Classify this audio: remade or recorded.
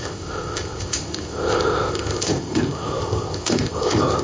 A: remade